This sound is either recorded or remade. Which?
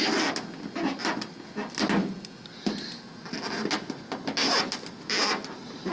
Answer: recorded